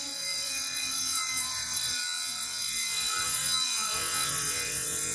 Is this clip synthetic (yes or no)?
yes